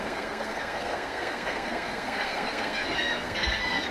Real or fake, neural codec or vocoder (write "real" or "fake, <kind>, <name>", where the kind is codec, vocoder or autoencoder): fake, codec, SNAC